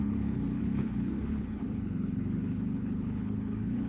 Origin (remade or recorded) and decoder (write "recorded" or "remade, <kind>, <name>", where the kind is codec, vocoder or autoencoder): remade, codec, HILCodec